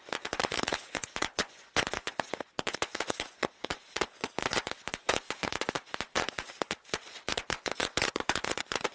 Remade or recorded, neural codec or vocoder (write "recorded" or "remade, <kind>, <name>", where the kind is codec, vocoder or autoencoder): remade, vocoder, Vocos